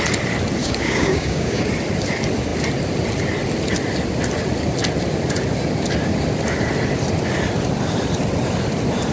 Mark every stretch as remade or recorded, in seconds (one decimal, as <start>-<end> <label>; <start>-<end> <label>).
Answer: 0.0-0.6 recorded; 0.6-1.7 remade; 1.7-9.1 recorded